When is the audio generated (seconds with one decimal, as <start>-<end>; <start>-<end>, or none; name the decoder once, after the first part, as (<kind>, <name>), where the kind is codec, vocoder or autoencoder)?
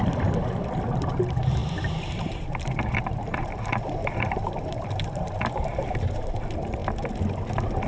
1.6-6.3 (vocoder, BigVGAN v2)